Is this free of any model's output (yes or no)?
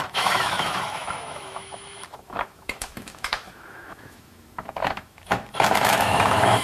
no